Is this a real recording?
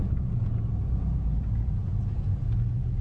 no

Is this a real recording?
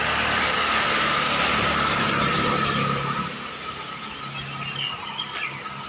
yes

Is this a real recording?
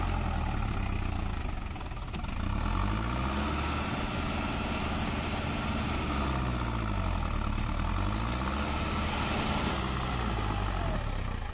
yes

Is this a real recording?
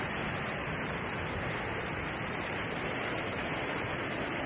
no